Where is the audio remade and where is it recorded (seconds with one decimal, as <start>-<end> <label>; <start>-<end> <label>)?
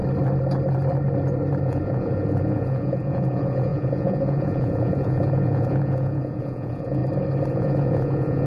0.0-1.6 recorded; 1.6-7.0 remade; 7.0-7.5 recorded; 7.5-8.5 remade